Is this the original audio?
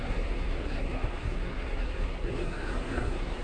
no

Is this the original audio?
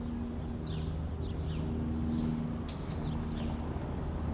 yes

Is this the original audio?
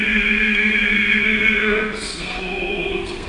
no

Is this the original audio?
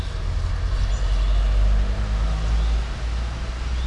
yes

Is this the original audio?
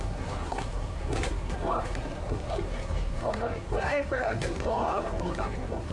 no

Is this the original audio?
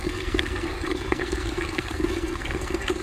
no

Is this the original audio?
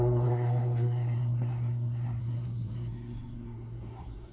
no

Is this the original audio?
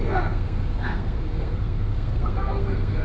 no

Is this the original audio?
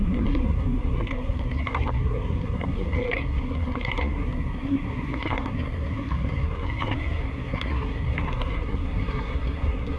no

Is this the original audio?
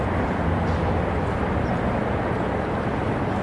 yes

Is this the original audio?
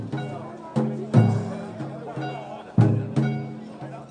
yes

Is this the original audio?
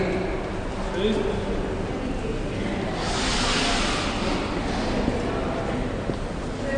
yes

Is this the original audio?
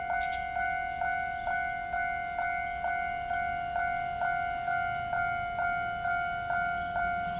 yes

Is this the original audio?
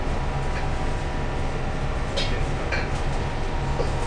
yes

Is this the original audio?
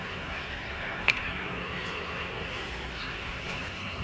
no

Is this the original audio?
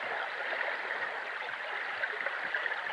yes